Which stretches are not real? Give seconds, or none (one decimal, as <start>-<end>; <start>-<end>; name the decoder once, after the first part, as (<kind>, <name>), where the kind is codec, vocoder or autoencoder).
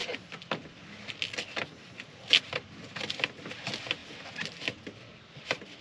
none